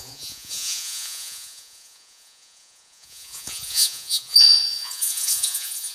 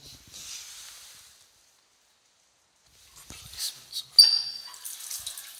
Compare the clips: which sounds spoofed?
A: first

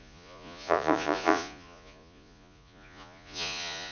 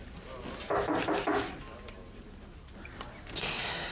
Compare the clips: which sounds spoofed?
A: first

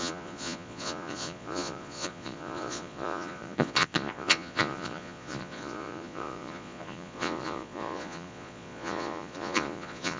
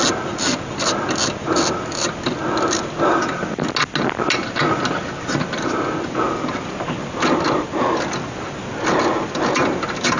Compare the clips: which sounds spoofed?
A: first